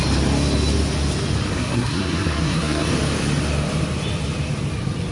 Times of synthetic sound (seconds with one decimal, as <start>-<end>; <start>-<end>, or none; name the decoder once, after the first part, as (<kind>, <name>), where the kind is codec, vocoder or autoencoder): 1.5-2.9 (codec, SNAC)